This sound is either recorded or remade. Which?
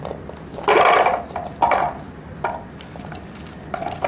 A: recorded